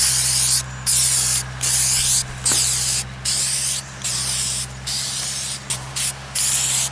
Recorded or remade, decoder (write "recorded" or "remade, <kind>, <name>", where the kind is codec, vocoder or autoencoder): recorded